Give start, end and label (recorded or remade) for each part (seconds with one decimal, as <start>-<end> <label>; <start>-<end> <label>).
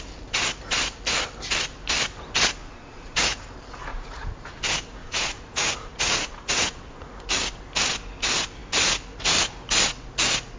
0.0-2.6 recorded; 2.6-3.4 remade; 3.4-3.9 recorded; 3.9-4.6 remade; 4.6-5.0 recorded; 5.0-7.1 remade; 7.1-10.6 recorded